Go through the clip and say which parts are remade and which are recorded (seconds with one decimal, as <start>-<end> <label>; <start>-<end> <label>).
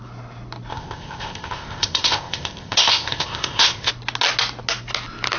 0.0-0.7 recorded; 0.7-3.9 remade; 3.9-5.4 recorded